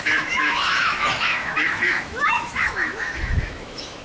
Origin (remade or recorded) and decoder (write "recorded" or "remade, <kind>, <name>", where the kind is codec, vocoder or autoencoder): remade, autoencoder, DAC-VAE